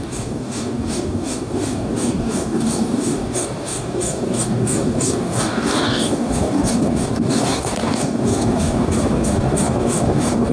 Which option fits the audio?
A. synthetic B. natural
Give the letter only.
A